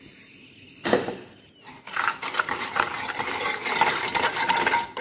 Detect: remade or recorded remade